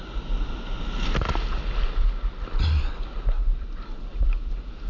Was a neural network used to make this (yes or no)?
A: no